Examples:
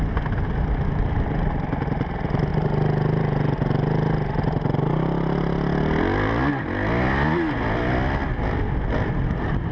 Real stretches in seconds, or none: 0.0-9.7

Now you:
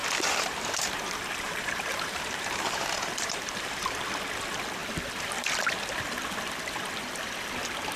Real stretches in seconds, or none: 4.2-8.0

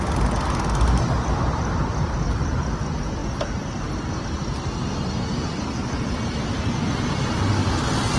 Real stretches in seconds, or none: 0.0-8.2

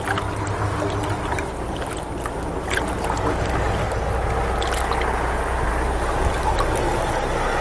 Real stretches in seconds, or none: 0.0-5.7; 6.6-7.6

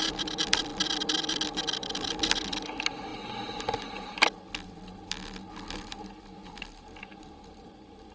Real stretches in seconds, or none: none

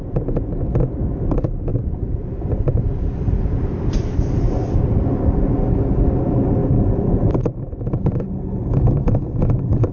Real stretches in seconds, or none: 0.0-1.7; 3.9-6.6; 7.4-9.9

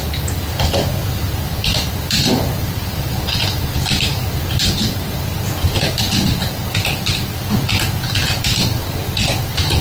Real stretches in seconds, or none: 0.0-4.1; 7.1-9.8

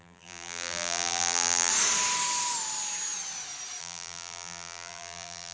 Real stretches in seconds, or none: 1.7-3.8